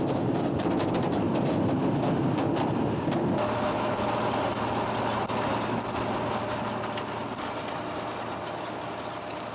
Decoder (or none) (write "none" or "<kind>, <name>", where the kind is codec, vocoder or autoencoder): none